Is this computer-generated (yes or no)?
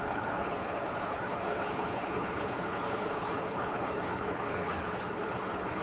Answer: yes